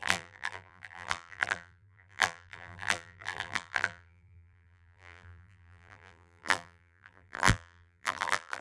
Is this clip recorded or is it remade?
remade